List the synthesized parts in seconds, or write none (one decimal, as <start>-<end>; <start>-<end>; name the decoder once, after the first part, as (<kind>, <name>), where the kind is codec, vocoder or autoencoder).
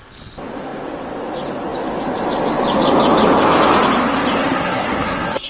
4.4-5.5 (codec, SNAC)